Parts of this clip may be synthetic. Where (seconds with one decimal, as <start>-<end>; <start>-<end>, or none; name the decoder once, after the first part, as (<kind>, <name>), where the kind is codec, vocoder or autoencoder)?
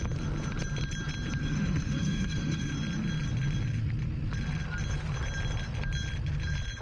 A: 1.4-2.7 (autoencoder, DAC-VAE)